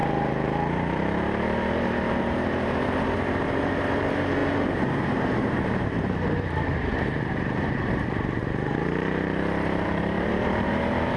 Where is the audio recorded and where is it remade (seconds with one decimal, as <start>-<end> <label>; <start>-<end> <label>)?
0.0-11.2 remade